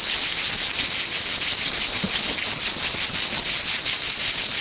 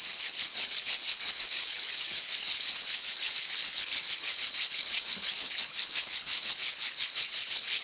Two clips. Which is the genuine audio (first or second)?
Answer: first